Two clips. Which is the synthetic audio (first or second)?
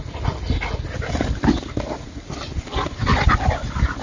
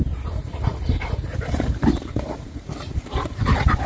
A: second